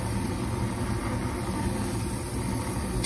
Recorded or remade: recorded